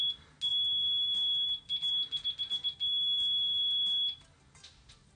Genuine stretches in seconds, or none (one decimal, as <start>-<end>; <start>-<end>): 0.0-0.5; 3.6-5.2